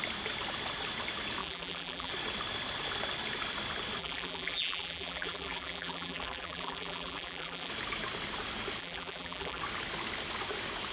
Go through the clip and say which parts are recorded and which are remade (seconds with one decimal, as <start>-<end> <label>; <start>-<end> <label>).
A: 0.0-1.4 recorded; 1.4-2.1 remade; 2.1-4.0 recorded; 4.0-7.7 remade; 7.7-8.8 recorded; 8.8-9.6 remade; 9.6-10.9 recorded